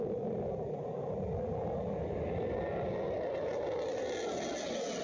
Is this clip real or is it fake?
real